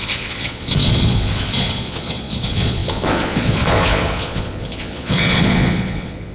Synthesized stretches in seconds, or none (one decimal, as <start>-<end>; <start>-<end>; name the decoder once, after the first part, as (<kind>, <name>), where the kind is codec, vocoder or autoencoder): 0.0-6.3 (vocoder, Vocos)